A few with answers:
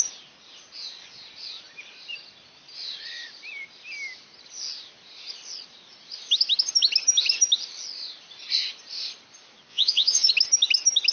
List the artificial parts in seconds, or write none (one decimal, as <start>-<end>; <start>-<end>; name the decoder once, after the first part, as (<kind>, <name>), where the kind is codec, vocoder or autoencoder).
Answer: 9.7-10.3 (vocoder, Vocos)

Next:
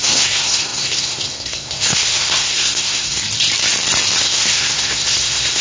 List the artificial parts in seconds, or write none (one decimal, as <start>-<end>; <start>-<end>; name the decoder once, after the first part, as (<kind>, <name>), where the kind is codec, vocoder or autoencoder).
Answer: 0.0-3.2 (codec, SNAC); 4.2-5.6

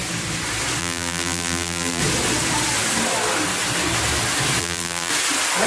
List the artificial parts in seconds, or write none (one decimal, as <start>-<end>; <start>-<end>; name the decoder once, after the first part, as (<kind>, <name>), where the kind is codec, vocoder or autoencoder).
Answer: 0.8-2.0 (vocoder, BigVGAN v2); 4.6-5.1

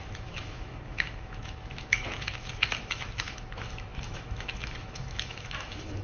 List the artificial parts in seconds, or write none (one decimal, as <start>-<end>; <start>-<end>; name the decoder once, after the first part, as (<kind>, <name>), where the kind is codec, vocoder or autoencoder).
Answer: 0.0-6.0 (autoencoder, DAC-VAE)

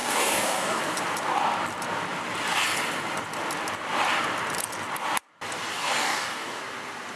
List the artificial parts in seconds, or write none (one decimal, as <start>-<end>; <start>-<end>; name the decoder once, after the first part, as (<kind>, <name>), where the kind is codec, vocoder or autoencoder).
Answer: 0.0-0.8 (codec, DAC); 5.7-6.6

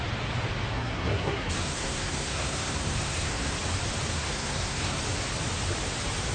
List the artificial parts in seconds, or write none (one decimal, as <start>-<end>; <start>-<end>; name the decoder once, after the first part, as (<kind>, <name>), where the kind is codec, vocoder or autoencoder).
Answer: 0.7-3.5 (codec, SNAC); 4.1-5.0

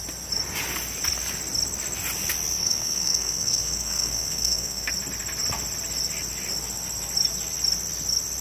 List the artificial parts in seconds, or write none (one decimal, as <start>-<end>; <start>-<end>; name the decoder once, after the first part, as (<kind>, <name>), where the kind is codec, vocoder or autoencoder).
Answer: 2.5-4.9 (codec, SNAC)